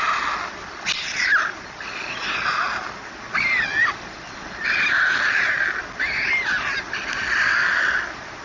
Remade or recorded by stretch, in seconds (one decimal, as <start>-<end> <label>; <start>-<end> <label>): 0.0-8.4 recorded